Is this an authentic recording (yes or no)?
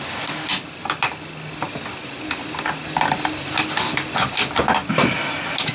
yes